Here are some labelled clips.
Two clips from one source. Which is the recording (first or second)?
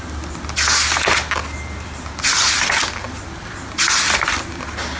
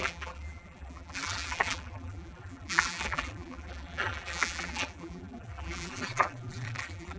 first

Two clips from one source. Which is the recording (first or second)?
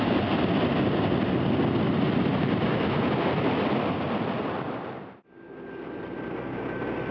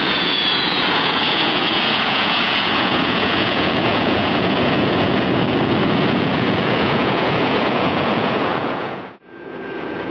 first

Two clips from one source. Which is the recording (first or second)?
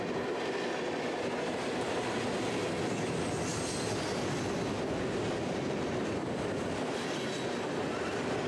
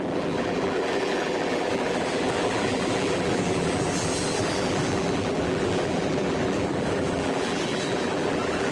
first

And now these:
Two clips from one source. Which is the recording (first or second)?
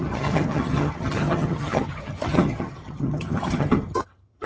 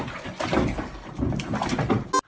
second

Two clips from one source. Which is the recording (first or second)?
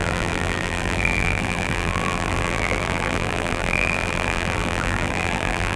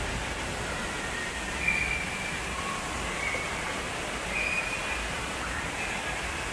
second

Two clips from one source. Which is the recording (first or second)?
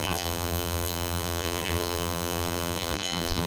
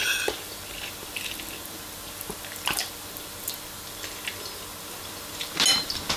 second